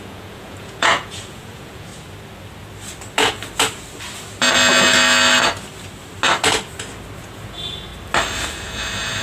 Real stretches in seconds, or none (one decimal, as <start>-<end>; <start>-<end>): 1.9-7.2; 7.9-9.2